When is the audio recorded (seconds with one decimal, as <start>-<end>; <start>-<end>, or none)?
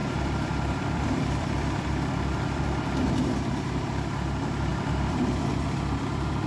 3.9-4.7